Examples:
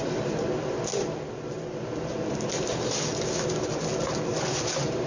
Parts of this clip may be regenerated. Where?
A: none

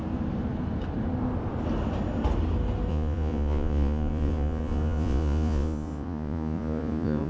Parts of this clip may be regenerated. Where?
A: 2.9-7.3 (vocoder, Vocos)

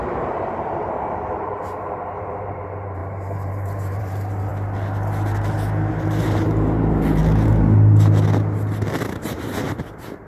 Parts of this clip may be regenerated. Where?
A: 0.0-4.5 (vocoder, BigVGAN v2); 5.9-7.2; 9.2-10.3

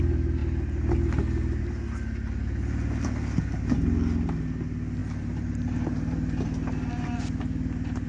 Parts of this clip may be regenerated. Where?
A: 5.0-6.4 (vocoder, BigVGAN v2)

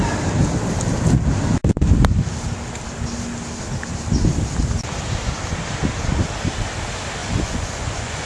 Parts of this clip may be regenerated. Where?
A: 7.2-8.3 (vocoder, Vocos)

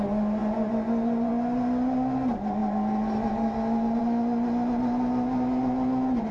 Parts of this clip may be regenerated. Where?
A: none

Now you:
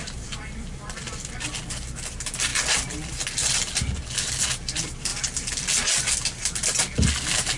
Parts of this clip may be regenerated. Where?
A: 0.0-0.8 (vocoder, BigVGAN v2)

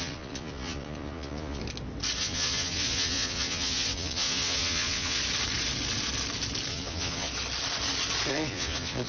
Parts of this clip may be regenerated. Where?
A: 0.0-1.6 (vocoder, Vocos); 2.2-5.2; 6.7-7.3; 8.3-9.1